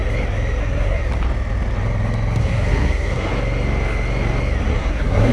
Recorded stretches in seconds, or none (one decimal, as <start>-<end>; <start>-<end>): 0.0-0.6; 1.0-2.4; 3.3-4.7